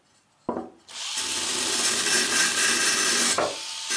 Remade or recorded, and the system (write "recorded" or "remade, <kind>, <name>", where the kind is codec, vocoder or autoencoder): recorded